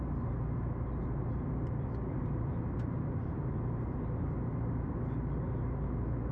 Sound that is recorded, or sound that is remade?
recorded